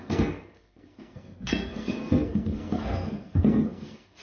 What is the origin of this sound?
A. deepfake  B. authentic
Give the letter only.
A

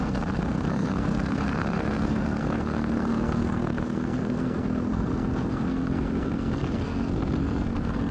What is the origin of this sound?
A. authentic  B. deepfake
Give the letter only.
B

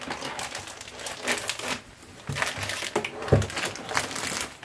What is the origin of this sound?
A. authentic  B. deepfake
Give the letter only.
A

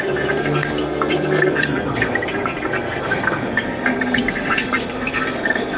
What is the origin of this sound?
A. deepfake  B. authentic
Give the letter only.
A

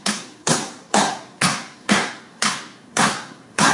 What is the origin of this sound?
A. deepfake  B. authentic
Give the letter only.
A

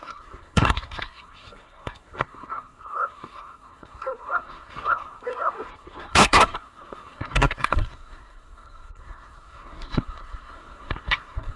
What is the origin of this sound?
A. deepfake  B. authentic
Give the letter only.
A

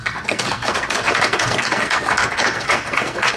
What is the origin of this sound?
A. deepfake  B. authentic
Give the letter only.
A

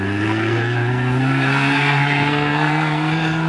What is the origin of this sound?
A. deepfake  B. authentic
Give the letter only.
A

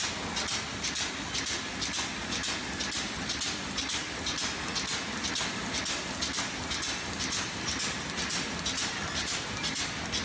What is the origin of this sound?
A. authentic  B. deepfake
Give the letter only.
A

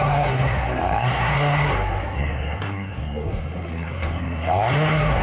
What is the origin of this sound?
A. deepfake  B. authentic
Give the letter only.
A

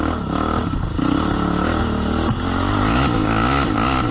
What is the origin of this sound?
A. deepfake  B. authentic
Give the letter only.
B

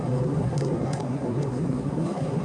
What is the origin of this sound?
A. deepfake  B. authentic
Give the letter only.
A